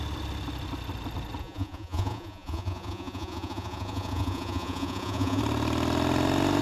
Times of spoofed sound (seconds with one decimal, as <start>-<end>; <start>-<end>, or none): 1.4-5.4